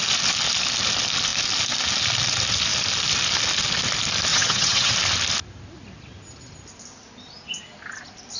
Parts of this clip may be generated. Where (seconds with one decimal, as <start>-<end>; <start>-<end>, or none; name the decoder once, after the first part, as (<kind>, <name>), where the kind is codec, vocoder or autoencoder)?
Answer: 4.3-4.9 (vocoder, HiFi-GAN)

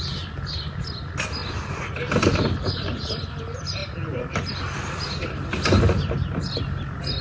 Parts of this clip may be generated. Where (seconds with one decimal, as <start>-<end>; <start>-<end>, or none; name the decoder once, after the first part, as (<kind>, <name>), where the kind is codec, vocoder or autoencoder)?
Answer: none

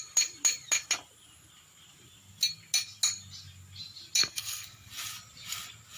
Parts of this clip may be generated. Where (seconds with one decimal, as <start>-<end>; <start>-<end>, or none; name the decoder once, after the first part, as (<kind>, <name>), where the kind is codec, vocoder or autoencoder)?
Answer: 4.2-4.9 (codec, SNAC)

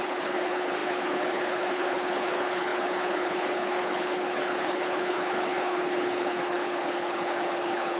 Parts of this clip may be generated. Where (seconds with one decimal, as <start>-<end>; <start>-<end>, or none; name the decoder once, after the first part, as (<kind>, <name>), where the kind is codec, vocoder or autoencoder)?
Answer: 0.0-8.0 (codec, HILCodec)

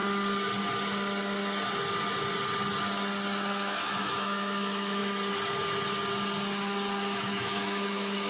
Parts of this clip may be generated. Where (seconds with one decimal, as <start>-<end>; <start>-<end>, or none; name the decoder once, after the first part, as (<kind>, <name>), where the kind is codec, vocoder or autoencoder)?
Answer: 3.5-5.0 (autoencoder, DAC-VAE); 7.2-8.3

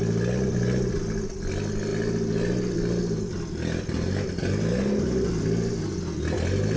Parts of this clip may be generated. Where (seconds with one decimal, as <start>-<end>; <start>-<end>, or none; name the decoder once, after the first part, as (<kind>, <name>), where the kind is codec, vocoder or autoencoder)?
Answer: none